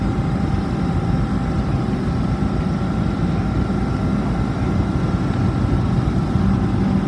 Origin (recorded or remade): recorded